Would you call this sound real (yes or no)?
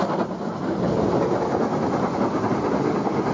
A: yes